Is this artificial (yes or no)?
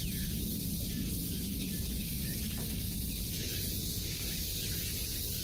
no